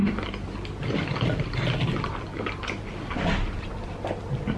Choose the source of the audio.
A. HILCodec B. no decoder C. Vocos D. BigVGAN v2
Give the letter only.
B